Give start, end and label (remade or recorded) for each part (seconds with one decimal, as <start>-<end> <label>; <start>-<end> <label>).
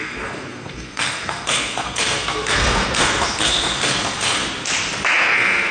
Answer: 0.0-4.4 remade; 4.4-5.2 recorded; 5.2-5.7 remade